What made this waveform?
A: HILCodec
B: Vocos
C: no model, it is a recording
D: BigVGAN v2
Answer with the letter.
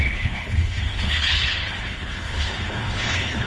A